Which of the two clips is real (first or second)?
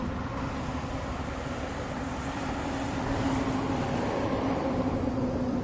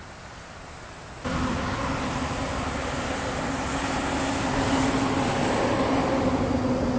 second